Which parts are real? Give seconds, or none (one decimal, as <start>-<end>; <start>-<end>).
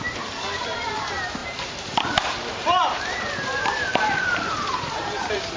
none